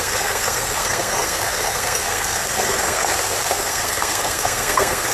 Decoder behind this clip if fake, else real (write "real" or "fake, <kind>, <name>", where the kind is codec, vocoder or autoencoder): fake, codec, SNAC